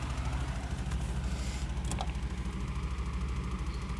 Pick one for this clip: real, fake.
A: real